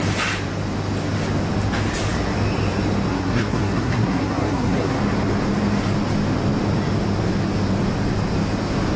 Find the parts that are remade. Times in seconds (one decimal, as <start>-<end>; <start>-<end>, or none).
3.1-5.0